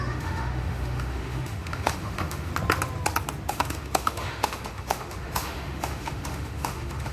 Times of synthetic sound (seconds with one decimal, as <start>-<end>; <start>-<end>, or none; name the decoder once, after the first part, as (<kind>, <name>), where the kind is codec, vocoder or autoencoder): 0.0-2.5 (autoencoder, DAC-VAE); 3.5-7.1